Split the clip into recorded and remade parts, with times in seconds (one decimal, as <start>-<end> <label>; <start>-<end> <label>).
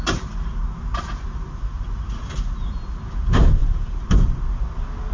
0.0-0.6 recorded; 0.6-2.6 remade; 2.6-3.6 recorded; 3.6-4.4 remade; 4.4-5.1 recorded